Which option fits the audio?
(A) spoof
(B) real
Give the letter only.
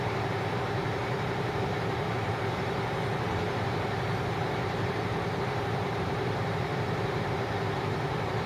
A